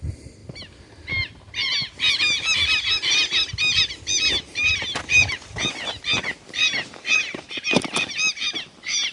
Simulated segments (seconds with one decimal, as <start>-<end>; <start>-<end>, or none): none